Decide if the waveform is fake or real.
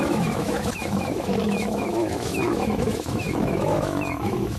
fake